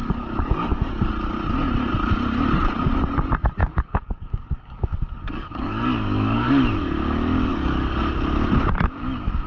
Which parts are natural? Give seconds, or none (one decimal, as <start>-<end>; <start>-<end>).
1.1-3.6; 6.5-7.5; 8.0-9.5